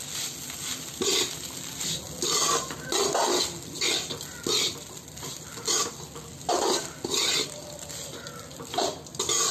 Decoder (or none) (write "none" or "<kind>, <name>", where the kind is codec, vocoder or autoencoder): none